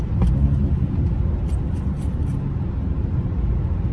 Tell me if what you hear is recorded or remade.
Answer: recorded